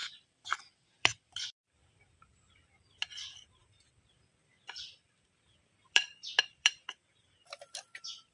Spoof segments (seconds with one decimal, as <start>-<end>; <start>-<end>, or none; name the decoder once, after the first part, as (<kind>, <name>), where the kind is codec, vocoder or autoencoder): 0.0-1.8 (vocoder, BigVGAN v2); 3.6-8.3